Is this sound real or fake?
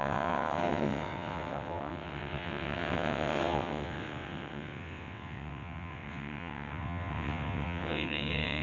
fake